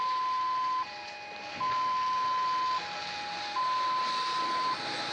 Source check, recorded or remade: recorded